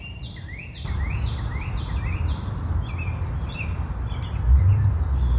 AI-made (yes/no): no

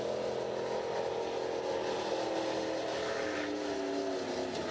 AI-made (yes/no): no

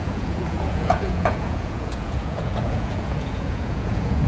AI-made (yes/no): yes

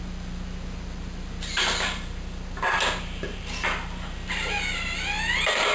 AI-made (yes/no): no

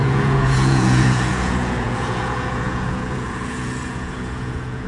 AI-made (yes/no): yes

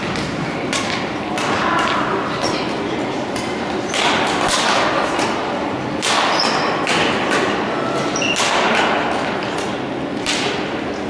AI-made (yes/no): no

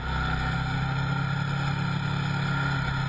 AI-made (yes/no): no